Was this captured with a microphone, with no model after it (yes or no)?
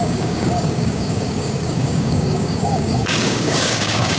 no